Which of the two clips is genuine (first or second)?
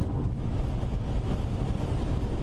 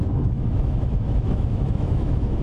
first